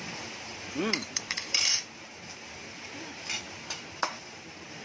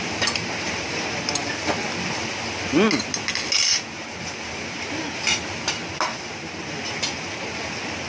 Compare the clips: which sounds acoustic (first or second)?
second